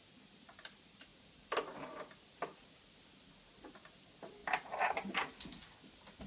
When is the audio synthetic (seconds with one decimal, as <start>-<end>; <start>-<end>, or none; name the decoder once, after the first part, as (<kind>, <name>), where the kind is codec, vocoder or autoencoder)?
none